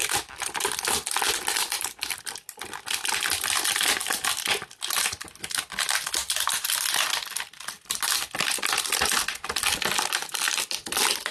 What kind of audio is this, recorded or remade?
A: recorded